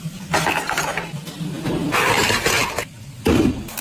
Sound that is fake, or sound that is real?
real